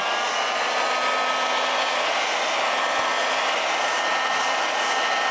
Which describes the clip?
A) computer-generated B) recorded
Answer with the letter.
B